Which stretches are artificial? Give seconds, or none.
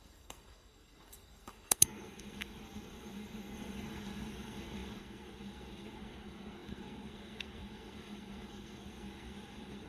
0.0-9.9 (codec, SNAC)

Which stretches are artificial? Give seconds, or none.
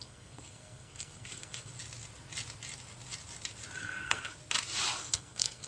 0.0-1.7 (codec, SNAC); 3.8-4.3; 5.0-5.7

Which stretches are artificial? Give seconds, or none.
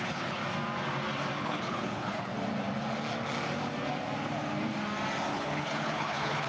0.0-0.4 (codec, HILCodec); 1.4-2.3; 5.3-6.5